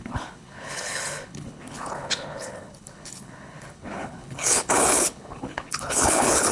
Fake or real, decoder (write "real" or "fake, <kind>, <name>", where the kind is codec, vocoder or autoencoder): fake, codec, HILCodec